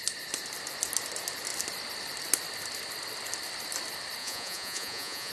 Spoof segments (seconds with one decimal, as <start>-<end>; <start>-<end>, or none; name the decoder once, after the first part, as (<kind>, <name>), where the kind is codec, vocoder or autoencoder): 4.2-5.3 (vocoder, Vocos)